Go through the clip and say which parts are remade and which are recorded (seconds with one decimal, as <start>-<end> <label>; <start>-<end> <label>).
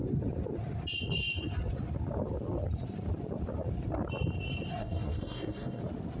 0.0-4.8 recorded; 4.8-5.8 remade; 5.8-6.2 recorded